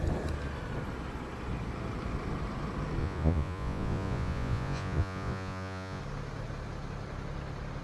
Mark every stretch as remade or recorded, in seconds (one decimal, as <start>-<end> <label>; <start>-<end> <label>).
0.0-3.0 recorded; 3.0-6.0 remade; 6.0-7.8 recorded